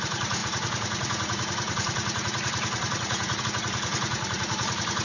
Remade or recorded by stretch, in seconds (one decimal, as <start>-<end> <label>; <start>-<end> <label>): 0.0-5.0 remade

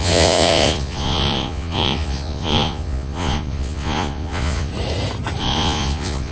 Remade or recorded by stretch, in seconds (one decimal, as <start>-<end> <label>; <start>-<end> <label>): 0.0-4.7 remade; 4.7-5.4 recorded; 5.4-6.3 remade

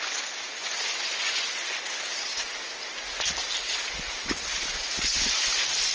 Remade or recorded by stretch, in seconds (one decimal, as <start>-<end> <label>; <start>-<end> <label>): 0.0-0.6 recorded; 0.6-1.8 remade; 1.8-5.9 recorded

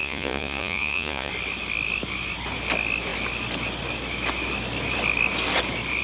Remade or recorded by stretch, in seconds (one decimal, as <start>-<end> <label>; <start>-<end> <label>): 0.0-1.3 remade; 1.3-6.0 recorded

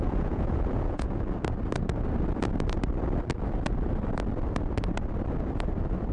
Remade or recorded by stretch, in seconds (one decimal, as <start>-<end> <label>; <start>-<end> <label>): 0.0-1.2 remade; 1.2-6.1 recorded